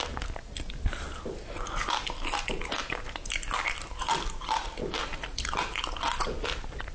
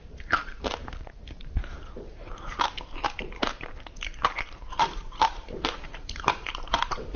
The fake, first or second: second